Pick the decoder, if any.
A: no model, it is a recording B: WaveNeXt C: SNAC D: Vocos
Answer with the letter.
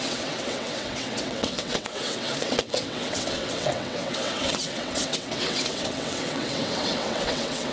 B